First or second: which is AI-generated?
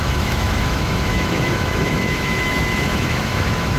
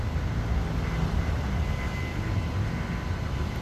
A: first